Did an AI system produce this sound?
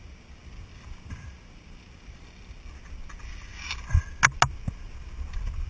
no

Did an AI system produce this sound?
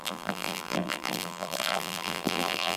yes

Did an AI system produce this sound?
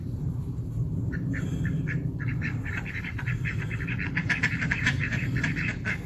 yes